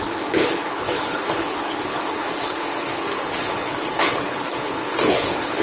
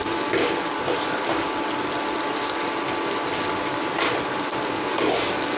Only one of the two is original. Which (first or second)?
second